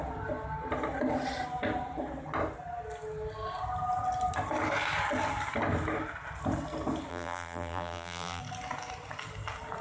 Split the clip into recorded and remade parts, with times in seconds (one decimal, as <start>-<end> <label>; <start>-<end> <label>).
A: 0.0-7.1 recorded; 7.1-8.4 remade; 8.4-9.8 recorded